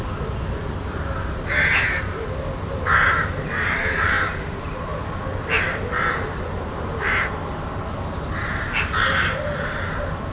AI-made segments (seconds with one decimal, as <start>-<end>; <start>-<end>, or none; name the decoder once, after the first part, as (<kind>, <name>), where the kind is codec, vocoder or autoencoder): none